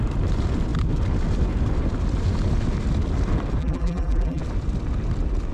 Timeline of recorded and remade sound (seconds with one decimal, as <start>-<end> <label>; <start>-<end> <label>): 0.0-3.6 recorded; 3.6-4.4 remade; 4.4-5.5 recorded